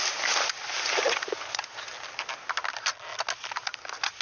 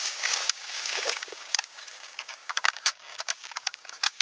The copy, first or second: second